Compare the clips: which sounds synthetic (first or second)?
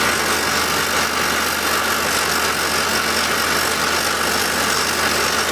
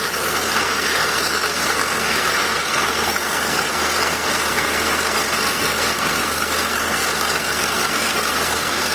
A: second